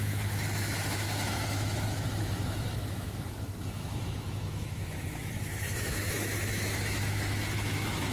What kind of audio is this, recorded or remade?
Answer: remade